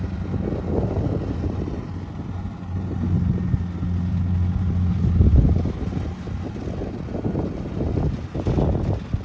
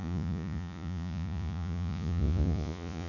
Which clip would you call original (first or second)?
first